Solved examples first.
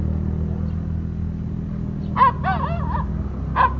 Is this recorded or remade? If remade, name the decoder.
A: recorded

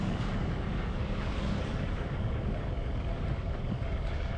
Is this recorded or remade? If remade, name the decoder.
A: remade, codec, DAC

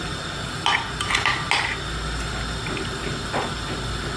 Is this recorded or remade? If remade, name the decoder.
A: recorded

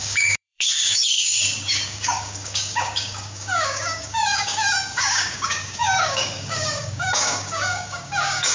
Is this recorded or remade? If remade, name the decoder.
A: remade, codec, DAC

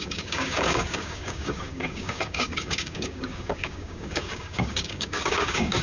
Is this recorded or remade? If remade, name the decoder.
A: remade, codec, DAC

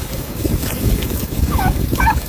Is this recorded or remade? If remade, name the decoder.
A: remade, codec, DAC